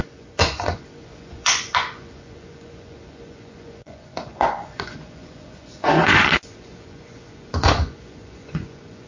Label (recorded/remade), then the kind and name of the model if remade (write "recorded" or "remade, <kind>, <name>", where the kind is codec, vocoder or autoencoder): remade, vocoder, Vocos